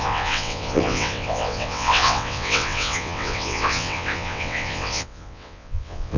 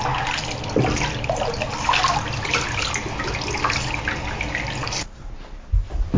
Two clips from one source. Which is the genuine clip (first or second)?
second